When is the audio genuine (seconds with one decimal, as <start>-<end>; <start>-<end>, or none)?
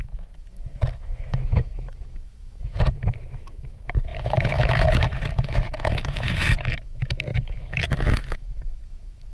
none